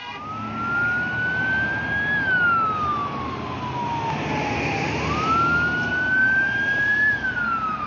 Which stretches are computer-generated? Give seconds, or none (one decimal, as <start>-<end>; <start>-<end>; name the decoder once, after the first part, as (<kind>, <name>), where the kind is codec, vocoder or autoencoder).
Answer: none